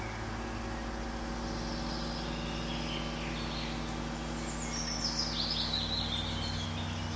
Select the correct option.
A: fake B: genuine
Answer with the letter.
B